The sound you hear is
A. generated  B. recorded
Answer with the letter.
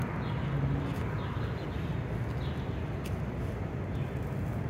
B